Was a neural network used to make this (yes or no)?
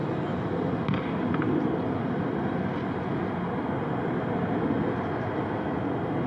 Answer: no